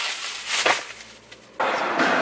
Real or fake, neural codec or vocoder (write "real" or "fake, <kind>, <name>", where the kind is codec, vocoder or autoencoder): real